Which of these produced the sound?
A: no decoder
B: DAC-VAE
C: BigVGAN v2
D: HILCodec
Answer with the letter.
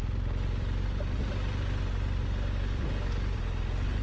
A